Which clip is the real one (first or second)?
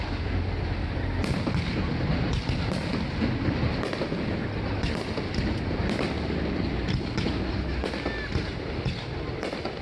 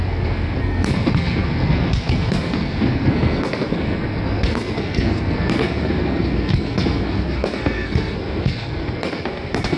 first